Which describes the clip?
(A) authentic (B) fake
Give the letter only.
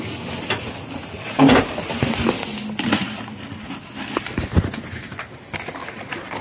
A